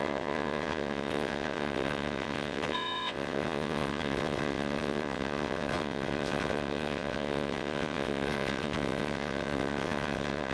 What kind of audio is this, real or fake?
fake